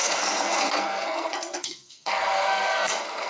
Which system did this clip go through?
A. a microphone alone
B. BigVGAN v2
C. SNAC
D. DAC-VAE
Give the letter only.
C